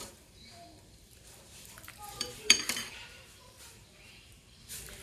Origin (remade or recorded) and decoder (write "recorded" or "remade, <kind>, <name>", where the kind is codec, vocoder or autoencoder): remade, vocoder, BigVGAN v2